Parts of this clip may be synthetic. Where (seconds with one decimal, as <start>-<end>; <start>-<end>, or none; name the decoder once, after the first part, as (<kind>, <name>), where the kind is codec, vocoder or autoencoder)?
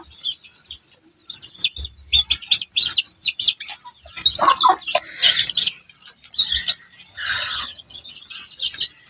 7.1-8.1 (vocoder, HiFi-GAN)